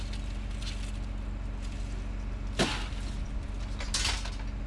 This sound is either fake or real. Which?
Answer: real